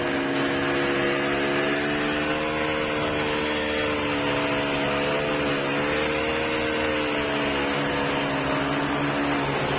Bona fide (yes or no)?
yes